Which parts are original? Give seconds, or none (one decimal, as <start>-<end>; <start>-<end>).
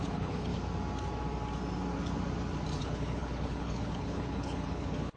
0.5-2.8